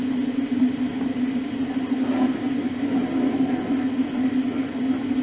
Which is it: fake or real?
real